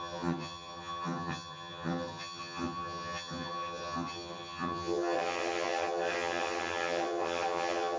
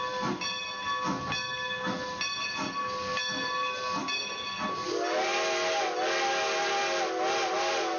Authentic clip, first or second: second